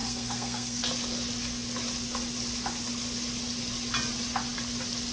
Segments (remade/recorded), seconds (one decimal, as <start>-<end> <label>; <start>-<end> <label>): 0.0-0.8 remade; 0.8-5.1 recorded